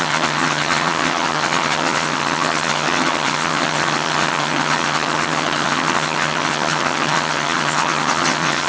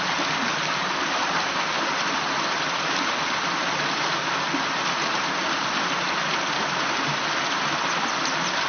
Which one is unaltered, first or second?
second